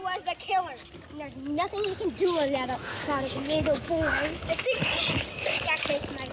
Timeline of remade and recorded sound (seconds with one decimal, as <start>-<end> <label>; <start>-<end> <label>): 0.0-2.9 recorded; 2.9-4.8 remade; 4.8-6.3 recorded